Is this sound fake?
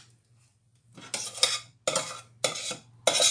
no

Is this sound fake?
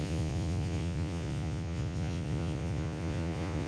yes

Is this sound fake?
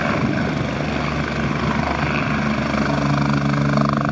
no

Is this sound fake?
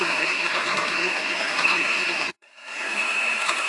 yes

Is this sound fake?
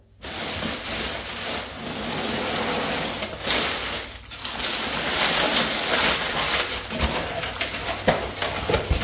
no